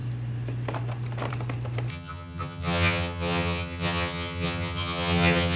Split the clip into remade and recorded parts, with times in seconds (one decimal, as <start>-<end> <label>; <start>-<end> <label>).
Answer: 0.0-1.9 recorded; 1.9-5.6 remade